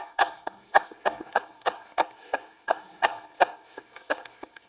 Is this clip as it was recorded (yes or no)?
no